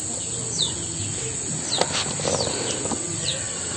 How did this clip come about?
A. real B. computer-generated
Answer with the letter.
A